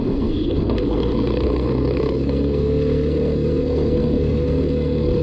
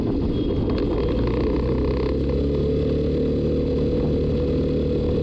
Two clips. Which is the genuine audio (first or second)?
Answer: second